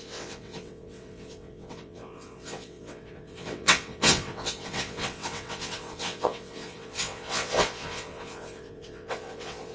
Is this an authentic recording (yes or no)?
no